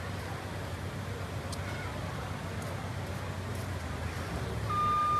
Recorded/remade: recorded